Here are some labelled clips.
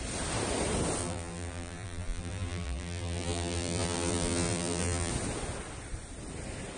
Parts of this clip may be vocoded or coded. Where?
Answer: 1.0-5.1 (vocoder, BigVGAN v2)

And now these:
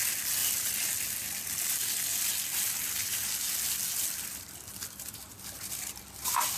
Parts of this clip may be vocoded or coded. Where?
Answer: 0.4-0.9 (vocoder, BigVGAN v2)